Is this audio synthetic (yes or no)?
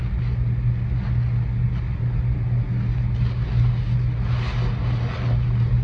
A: no